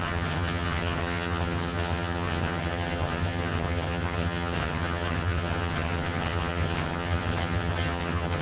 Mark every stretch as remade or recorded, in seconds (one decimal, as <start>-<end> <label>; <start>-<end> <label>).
0.0-8.4 remade